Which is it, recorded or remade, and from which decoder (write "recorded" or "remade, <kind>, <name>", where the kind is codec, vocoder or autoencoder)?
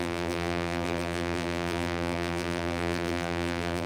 remade, vocoder, BigVGAN v2